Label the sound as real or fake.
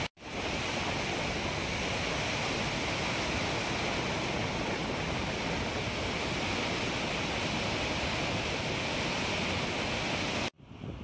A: real